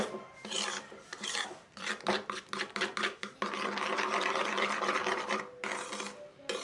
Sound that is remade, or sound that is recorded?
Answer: recorded